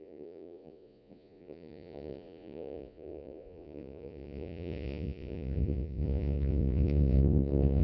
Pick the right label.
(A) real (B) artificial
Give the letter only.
B